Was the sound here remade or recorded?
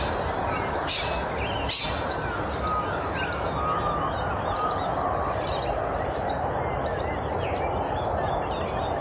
recorded